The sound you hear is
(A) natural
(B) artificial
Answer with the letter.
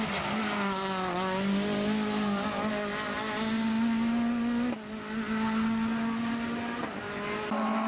A